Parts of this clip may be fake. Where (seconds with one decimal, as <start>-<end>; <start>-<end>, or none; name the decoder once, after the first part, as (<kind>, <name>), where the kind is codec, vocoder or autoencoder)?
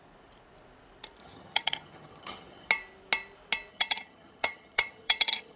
1.2-2.7 (vocoder, HiFi-GAN); 3.7-5.6